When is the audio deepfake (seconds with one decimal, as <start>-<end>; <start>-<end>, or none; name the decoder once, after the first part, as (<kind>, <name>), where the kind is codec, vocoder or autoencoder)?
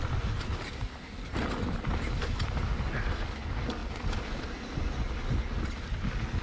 none